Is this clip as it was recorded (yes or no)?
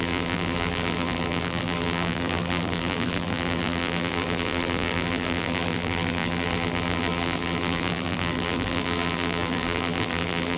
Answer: no